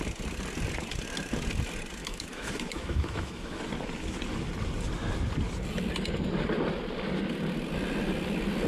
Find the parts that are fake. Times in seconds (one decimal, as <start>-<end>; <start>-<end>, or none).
2.0-3.6